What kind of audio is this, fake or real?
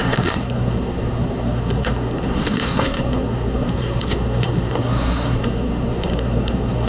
fake